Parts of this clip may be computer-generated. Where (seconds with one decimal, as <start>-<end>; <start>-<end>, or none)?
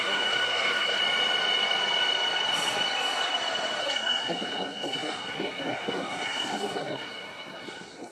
0.0-1.0; 3.8-8.1